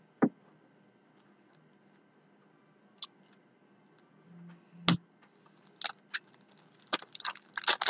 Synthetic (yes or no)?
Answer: no